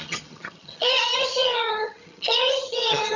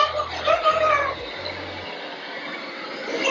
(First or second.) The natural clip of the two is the second